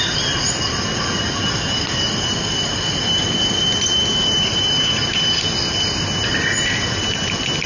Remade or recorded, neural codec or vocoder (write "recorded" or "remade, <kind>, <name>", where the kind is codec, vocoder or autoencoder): recorded